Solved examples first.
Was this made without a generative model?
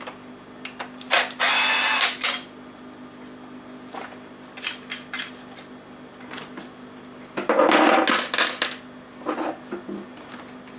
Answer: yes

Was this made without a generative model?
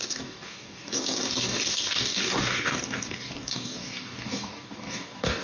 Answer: no